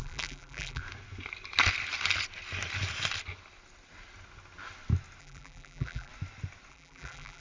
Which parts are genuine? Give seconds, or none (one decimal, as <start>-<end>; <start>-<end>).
0.8-5.2; 6.1-6.7